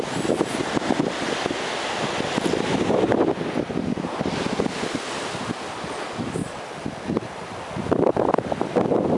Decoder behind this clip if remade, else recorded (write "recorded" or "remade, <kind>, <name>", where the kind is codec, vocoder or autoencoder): recorded